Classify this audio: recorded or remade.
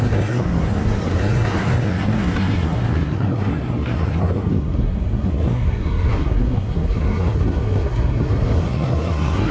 remade